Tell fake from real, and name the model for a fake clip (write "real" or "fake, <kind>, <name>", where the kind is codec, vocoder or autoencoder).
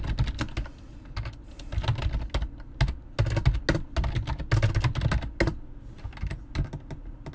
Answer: real